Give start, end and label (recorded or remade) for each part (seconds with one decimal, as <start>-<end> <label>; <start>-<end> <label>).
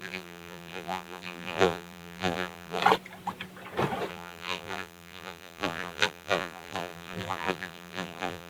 0.0-2.8 remade; 2.8-4.1 recorded; 4.1-8.5 remade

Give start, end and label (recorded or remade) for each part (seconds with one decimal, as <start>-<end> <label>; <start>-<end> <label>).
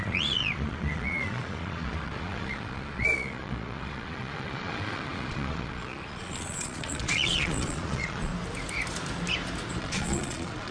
0.0-8.3 remade; 8.3-9.8 recorded; 9.8-10.7 remade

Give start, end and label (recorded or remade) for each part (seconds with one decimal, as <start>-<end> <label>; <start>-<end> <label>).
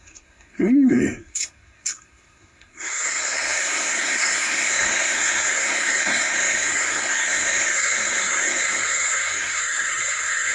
0.0-10.5 remade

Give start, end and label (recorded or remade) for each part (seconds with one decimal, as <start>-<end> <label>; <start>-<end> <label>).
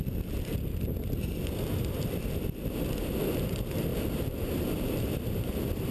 0.0-3.9 recorded; 3.9-5.0 remade; 5.0-5.9 recorded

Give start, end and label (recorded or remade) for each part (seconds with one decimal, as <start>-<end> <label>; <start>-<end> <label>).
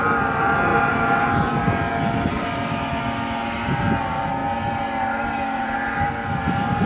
0.0-0.7 remade; 0.7-2.3 recorded; 2.3-4.4 remade; 4.4-5.6 recorded; 5.6-6.9 remade